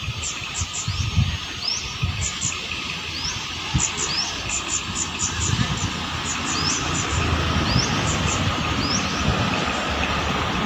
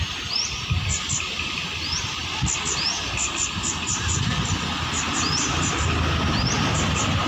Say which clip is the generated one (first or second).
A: second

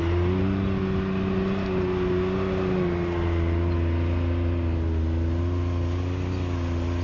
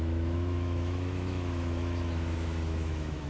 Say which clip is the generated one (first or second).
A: second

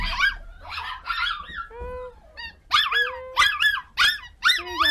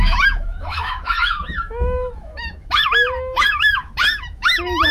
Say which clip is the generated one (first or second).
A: second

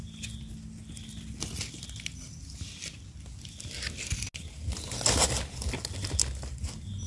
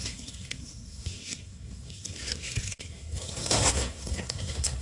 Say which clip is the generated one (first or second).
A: second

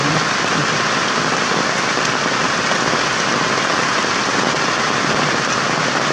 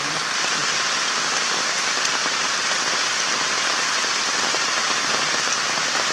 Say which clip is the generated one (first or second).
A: second